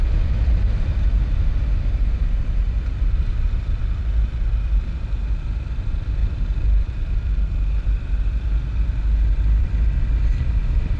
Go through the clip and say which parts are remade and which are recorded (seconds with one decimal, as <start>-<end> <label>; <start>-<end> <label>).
0.0-0.9 remade; 0.9-1.5 recorded; 1.5-11.0 remade